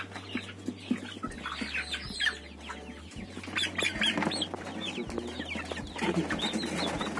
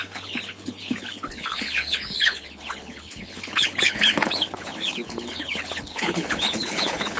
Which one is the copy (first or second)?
second